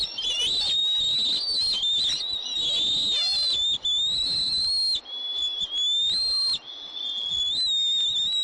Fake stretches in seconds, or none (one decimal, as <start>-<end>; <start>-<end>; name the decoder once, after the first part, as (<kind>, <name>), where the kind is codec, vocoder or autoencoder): none